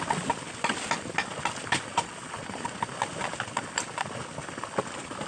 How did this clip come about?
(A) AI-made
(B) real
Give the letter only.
B